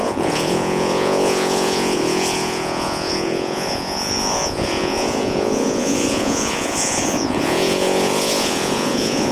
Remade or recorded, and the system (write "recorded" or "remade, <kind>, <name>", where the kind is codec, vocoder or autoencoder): remade, vocoder, Vocos